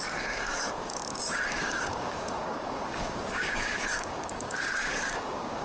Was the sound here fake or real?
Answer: fake